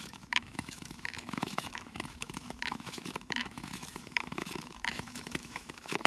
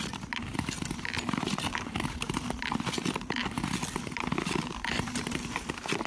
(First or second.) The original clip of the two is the second